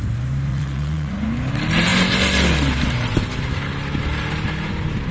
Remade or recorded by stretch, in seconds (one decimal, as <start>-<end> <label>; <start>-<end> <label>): 0.0-0.5 recorded; 0.5-1.1 remade; 1.1-5.1 recorded